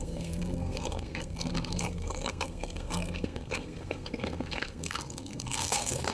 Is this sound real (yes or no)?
no